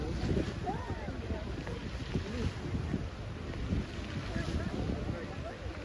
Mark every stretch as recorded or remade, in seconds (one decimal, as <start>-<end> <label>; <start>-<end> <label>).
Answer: 0.0-1.8 recorded; 1.8-3.1 remade; 3.1-5.8 recorded